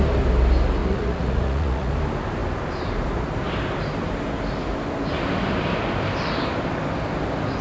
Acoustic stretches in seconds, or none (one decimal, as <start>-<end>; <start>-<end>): 0.0-0.8; 1.9-7.6